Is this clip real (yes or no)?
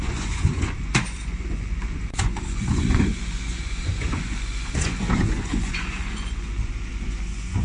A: no